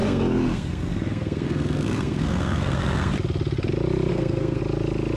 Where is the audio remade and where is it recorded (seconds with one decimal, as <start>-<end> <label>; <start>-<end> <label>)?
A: 0.0-3.1 remade; 3.1-4.1 recorded; 4.1-4.6 remade; 4.6-5.2 recorded